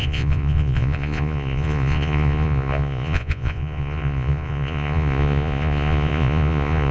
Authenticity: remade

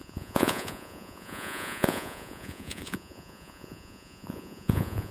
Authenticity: remade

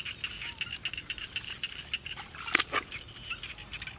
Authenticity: recorded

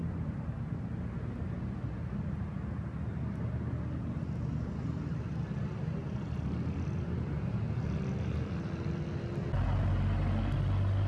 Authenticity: recorded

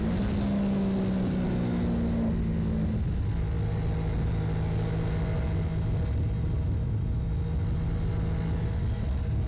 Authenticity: recorded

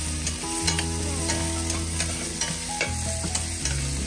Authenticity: recorded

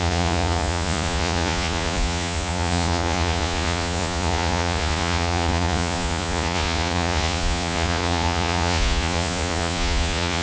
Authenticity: remade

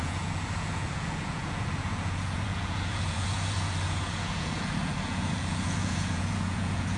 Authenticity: remade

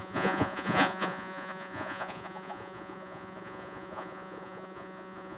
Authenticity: remade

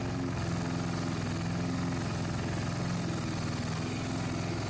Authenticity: recorded